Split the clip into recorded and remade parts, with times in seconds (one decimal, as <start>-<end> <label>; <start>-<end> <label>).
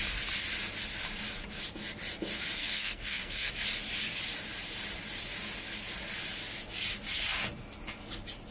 0.0-2.6 recorded; 2.6-3.5 remade; 3.5-8.5 recorded